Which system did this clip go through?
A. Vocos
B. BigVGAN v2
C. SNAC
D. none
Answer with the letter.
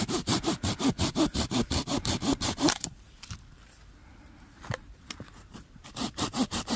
B